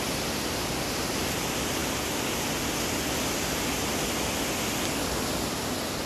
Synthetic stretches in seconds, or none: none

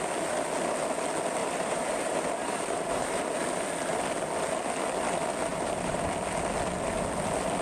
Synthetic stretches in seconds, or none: 1.4-3.2 (vocoder, BigVGAN v2); 5.5-6.1

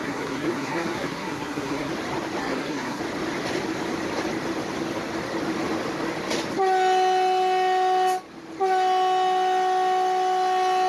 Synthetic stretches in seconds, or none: 0.0-1.9 (codec, SNAC); 2.4-3.0

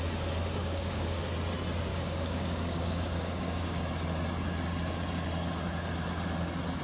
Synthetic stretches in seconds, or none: 0.6-1.2 (codec, DAC); 1.9-3.9

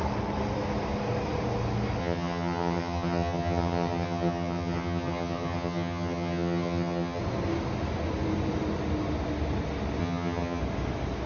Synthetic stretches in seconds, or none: 2.0-7.2 (vocoder, HiFi-GAN); 10.0-10.6

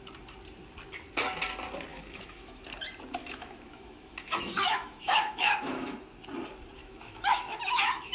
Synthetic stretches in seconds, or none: 1.9-2.6 (autoencoder, DAC-VAE); 3.2-6.0; 6.8-8.1

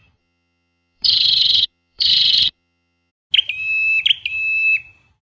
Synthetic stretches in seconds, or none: 0.0-3.1 (vocoder, HiFi-GAN)

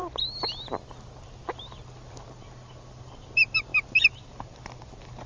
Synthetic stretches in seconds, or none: none